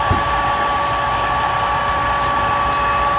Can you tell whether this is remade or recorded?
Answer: recorded